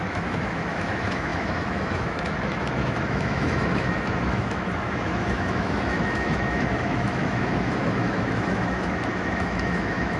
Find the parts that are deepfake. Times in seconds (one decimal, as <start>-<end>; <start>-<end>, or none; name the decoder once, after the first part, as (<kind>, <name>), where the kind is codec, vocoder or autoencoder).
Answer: 0.0-10.2 (autoencoder, DAC-VAE)